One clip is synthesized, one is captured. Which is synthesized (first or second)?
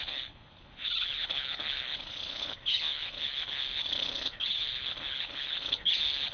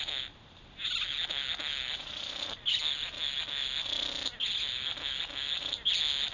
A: first